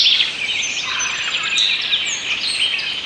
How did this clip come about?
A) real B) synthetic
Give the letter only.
A